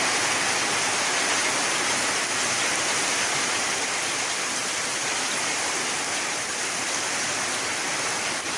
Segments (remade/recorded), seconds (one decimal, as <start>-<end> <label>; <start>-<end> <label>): 0.0-8.6 recorded